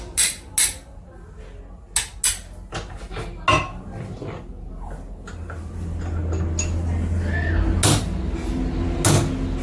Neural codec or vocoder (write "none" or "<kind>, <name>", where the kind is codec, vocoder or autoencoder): none